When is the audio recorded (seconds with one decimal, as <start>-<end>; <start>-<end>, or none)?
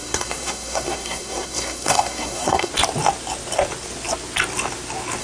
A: 2.7-5.2